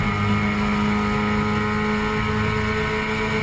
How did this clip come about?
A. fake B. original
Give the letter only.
B